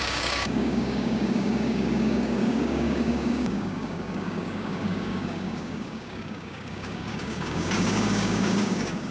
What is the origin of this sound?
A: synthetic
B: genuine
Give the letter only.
A